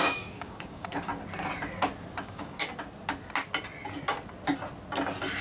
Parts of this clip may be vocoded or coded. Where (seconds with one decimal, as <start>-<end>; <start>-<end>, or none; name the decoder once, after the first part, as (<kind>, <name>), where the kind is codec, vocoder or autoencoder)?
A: 0.0-1.1 (codec, DAC); 2.2-2.6